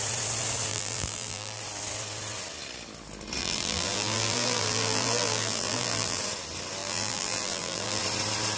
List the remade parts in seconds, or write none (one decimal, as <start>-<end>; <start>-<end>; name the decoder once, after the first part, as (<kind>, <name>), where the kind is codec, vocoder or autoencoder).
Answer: 0.7-1.6 (vocoder, BigVGAN v2); 3.4-6.2; 6.8-8.0